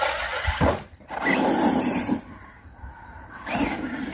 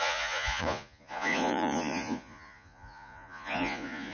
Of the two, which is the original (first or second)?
first